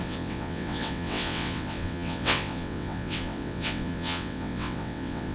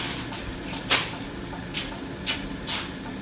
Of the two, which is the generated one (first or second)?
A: first